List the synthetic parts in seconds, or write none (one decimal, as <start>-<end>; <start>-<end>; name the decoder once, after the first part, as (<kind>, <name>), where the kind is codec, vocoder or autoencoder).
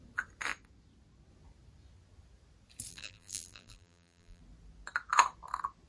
2.9-4.4 (vocoder, BigVGAN v2)